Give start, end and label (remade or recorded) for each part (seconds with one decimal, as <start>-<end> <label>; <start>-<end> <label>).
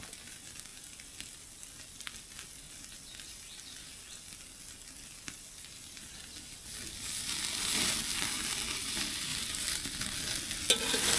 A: 0.0-11.2 recorded